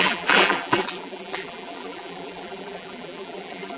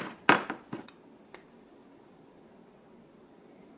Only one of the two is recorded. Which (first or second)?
second